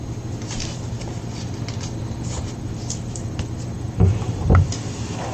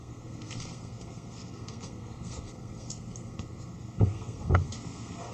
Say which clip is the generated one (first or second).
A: second